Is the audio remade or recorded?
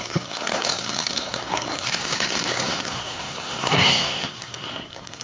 remade